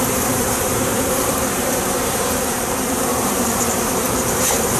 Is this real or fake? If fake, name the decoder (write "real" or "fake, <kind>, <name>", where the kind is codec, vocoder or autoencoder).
fake, vocoder, BigVGAN v2